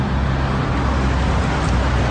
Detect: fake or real real